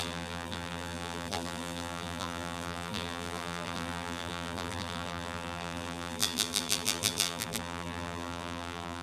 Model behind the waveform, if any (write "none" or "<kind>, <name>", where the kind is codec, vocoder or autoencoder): vocoder, BigVGAN v2